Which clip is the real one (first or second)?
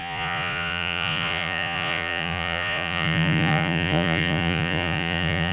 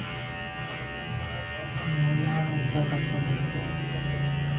second